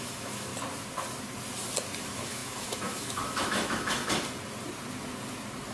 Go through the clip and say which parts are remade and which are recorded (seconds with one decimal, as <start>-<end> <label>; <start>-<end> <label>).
0.0-0.5 remade; 0.5-2.0 recorded; 2.0-4.0 remade; 4.0-5.7 recorded